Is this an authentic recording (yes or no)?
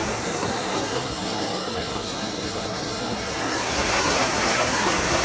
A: no